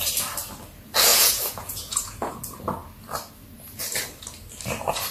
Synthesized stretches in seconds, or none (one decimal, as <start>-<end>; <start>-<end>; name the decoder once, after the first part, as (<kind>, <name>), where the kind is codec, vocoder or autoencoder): 1.1-2.3 (vocoder, Vocos)